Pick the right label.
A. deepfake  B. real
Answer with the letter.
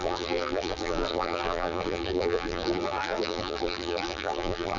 A